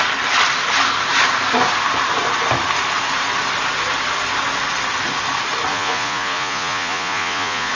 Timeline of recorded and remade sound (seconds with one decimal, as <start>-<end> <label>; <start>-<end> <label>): 0.0-5.7 recorded; 5.7-7.7 remade